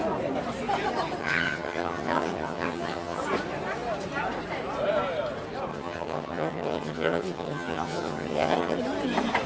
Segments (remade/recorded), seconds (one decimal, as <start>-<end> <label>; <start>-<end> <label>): 0.0-1.2 recorded; 1.2-3.2 remade; 3.2-5.7 recorded; 5.7-8.8 remade; 8.8-9.5 recorded

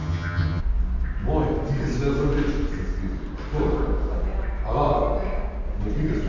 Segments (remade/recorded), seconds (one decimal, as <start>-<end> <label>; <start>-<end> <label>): 0.0-0.6 remade; 0.6-6.3 recorded